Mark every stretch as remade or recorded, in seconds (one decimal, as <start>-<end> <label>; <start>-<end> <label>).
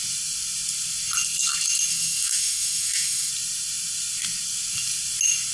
0.0-1.9 recorded; 1.9-3.3 remade; 3.3-5.5 recorded